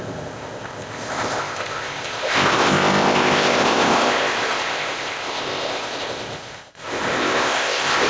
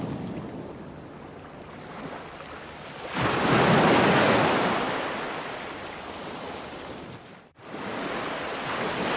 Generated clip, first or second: first